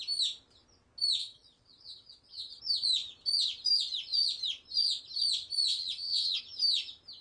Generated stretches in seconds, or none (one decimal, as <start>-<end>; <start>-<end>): 1.2-2.6; 5.7-6.4